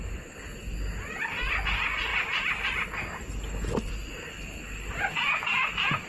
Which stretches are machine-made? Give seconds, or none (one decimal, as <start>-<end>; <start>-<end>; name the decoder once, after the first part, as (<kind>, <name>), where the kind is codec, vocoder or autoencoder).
none